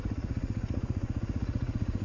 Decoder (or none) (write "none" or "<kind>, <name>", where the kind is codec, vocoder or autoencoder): vocoder, Vocos